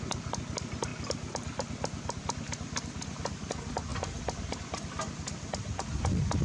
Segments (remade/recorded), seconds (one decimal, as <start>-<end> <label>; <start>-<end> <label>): 0.0-6.4 recorded